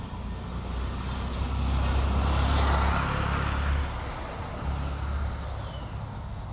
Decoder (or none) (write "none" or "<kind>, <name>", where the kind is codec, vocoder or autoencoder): none